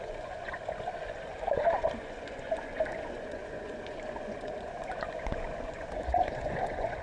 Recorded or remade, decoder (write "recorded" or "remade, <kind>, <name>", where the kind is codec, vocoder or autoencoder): remade, vocoder, Vocos